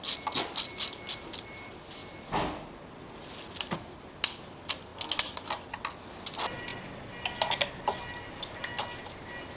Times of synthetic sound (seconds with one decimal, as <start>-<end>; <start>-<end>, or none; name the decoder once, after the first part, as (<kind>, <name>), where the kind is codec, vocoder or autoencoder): none

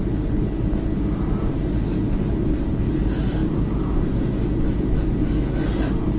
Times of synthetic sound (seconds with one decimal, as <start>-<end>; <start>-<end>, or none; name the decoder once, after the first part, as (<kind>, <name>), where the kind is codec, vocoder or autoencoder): none